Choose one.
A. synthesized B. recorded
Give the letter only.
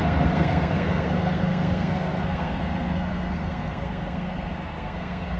A